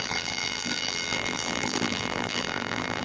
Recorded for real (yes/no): no